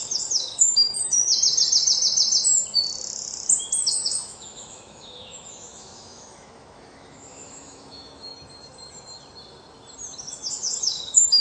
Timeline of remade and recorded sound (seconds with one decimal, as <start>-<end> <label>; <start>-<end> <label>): 0.0-1.2 remade; 1.2-3.9 recorded; 3.9-8.3 remade; 8.3-10.3 recorded; 10.3-11.4 remade